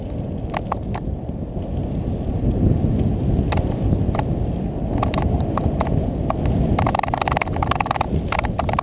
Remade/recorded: recorded